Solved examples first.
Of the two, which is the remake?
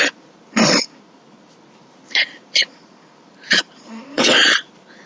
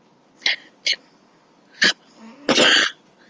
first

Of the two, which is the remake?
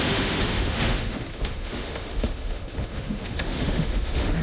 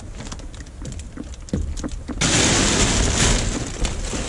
first